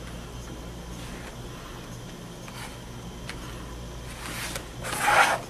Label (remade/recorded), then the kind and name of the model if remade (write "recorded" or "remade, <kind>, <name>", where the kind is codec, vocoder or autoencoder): recorded